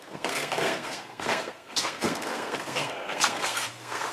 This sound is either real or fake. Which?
fake